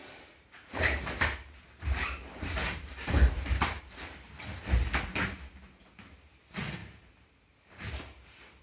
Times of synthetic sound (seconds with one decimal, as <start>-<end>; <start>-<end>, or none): 0.0-3.8; 6.8-8.6